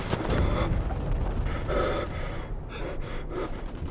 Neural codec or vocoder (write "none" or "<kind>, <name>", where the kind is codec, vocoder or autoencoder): none